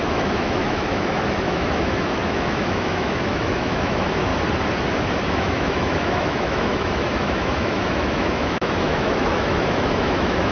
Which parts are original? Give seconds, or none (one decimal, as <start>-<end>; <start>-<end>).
4.3-5.3